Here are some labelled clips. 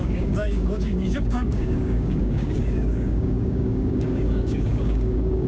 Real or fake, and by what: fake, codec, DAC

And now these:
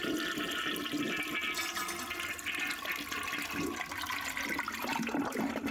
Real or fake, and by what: real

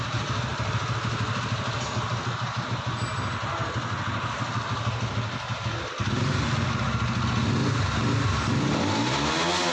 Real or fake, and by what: real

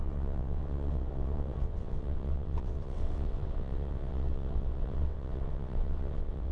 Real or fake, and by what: fake, vocoder, WaveNeXt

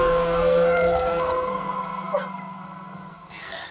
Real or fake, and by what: fake, codec, SNAC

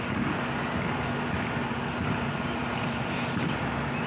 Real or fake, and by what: real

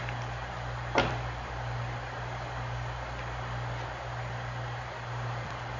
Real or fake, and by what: real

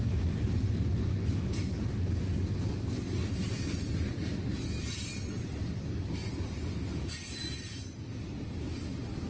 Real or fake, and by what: real